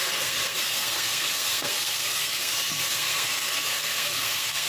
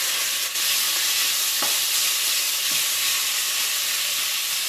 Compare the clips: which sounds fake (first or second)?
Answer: first